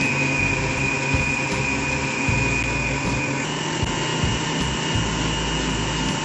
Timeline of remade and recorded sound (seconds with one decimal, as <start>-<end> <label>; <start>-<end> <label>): 0.0-6.2 recorded